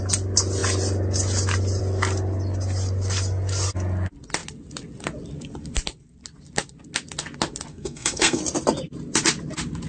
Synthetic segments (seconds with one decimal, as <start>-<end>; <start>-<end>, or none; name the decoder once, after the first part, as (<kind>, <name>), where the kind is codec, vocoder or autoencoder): 7.7-8.4 (codec, SNAC)